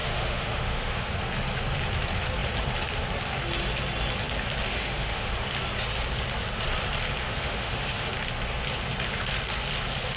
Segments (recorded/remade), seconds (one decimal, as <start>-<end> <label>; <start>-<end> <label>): 0.0-1.1 remade; 1.1-4.7 recorded; 4.7-5.3 remade; 5.3-7.2 recorded; 7.2-8.1 remade; 8.1-10.2 recorded